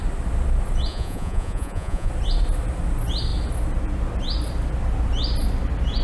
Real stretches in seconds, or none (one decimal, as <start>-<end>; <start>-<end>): 0.0-0.9; 2.1-6.0